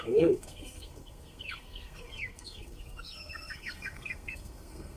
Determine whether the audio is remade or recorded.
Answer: remade